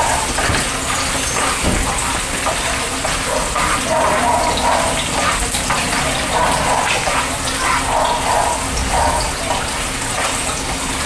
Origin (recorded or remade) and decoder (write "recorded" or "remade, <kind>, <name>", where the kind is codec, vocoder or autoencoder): recorded